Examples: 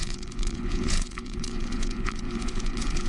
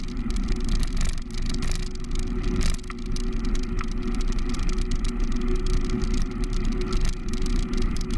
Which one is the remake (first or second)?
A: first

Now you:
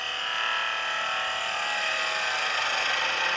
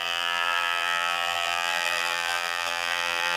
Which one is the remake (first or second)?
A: second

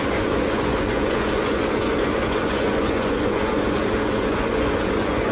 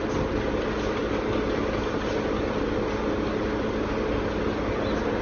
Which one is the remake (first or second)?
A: first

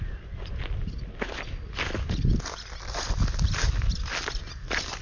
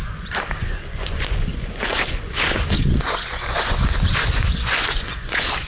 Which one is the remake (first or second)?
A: second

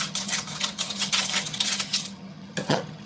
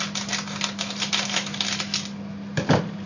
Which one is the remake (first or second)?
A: first